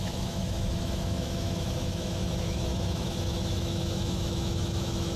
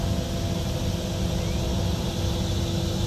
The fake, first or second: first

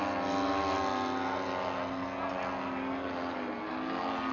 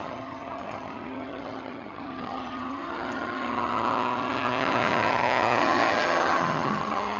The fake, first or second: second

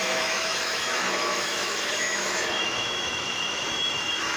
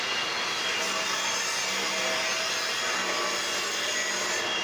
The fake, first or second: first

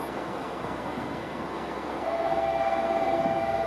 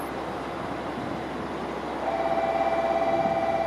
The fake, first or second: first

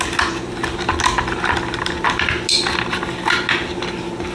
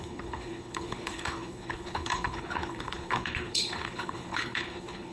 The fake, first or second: second